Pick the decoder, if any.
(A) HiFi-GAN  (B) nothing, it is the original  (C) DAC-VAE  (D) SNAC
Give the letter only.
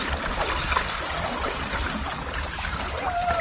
B